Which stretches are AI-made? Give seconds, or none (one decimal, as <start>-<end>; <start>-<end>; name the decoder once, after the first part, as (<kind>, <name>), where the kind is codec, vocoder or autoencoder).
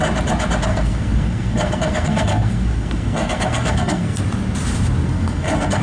0.7-4.2 (codec, SNAC); 5.0-5.8